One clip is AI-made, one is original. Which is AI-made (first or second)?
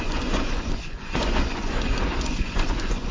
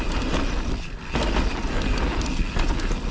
first